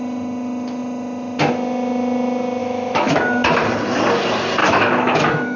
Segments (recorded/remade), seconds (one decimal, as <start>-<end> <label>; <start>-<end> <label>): 0.0-2.6 recorded; 2.6-3.2 remade; 3.2-4.6 recorded; 4.6-5.6 remade